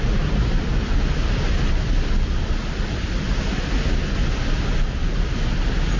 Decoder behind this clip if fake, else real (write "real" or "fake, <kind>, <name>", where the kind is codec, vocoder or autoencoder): real